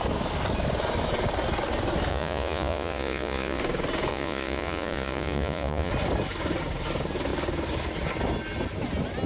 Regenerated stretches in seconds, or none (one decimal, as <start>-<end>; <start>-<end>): 2.1-3.6; 4.1-5.9